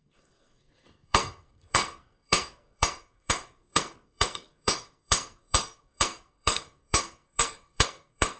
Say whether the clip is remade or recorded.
remade